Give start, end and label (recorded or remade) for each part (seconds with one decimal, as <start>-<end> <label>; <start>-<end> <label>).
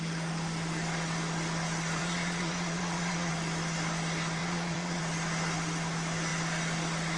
0.0-2.0 recorded; 2.0-3.3 remade; 3.3-4.4 recorded; 4.4-5.0 remade; 5.0-7.2 recorded